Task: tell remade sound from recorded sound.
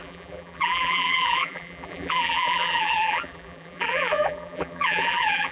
remade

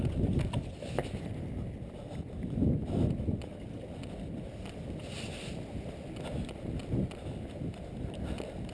recorded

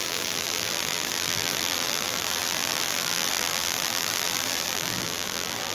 remade